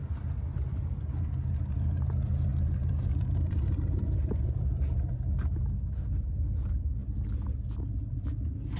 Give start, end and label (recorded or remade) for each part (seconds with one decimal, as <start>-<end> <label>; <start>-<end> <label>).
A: 0.0-2.5 recorded; 2.5-7.0 remade; 7.0-7.8 recorded; 7.8-8.8 remade

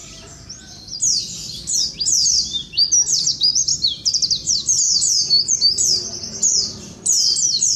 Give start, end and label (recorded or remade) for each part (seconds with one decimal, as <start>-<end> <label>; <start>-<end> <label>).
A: 0.0-3.2 recorded; 3.2-7.8 remade

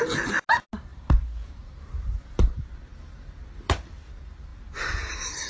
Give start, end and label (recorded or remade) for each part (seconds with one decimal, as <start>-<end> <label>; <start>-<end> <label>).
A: 0.0-0.9 recorded; 0.9-2.7 remade; 2.7-5.5 recorded